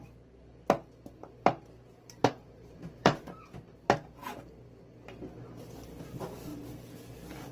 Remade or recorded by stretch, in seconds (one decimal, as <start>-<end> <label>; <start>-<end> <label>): 0.0-2.2 recorded; 2.2-3.4 remade; 3.4-7.5 recorded